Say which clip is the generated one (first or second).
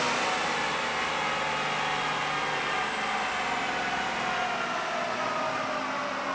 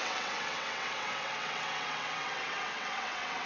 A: second